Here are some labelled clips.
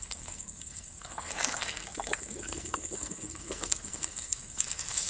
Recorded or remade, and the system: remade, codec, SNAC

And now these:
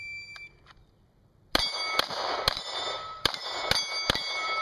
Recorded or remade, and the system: recorded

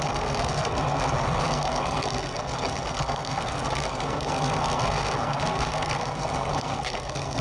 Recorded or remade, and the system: remade, codec, SNAC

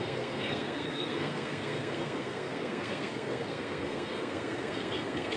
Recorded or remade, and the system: remade, codec, SNAC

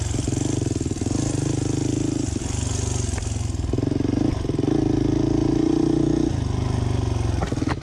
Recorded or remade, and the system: recorded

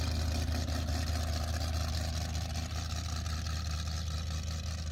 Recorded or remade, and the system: recorded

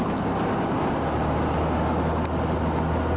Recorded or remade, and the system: recorded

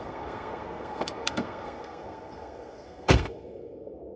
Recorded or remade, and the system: remade, codec, SNAC